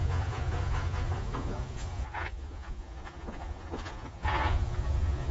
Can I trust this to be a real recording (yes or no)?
no